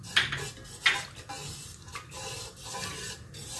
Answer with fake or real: real